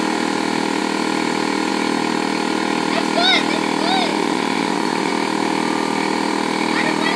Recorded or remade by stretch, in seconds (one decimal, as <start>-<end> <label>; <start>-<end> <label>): 0.0-4.1 recorded; 4.1-5.1 remade; 5.1-7.2 recorded